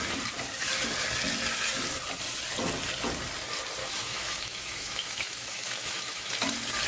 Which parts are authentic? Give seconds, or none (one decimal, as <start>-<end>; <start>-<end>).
0.0-3.8; 6.3-6.9